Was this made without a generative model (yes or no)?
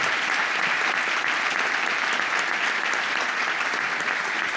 yes